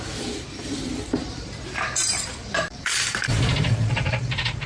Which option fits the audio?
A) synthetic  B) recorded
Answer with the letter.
A